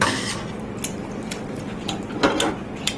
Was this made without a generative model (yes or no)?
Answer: yes